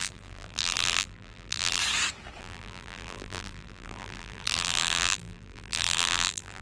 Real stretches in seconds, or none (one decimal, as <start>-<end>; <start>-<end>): 1.8-2.4